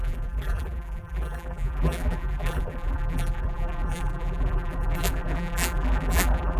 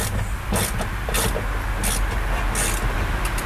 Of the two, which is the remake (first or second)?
first